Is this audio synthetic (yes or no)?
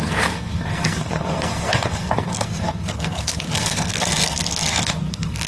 yes